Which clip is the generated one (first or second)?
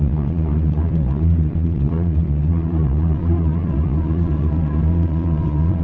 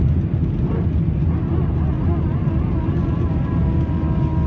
first